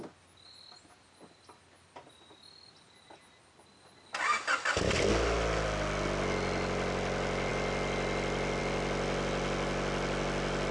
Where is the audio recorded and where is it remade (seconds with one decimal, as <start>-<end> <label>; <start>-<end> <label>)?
0.0-10.7 recorded